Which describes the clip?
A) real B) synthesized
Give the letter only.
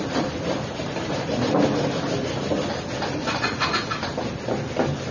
A